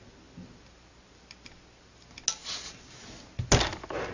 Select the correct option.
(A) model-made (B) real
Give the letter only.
B